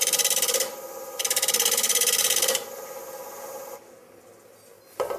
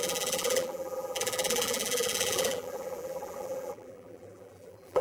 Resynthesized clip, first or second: second